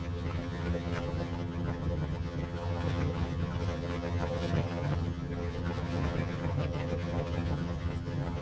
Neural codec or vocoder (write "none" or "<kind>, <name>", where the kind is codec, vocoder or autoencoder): vocoder, HiFi-GAN